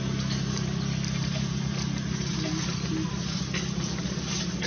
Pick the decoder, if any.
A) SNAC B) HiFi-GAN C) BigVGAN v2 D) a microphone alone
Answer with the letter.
D